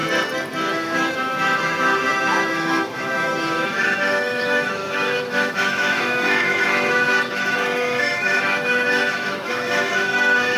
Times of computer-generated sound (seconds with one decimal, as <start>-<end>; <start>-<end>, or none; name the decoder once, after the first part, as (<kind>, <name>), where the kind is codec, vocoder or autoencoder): 0.7-10.6 (autoencoder, DAC-VAE)